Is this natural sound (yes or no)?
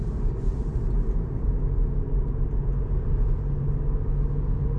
yes